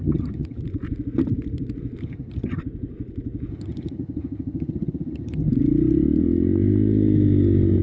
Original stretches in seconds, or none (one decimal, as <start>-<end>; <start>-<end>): 0.6-2.0; 2.6-3.5; 5.5-7.8